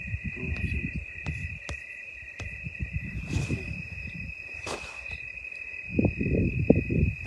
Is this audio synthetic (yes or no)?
no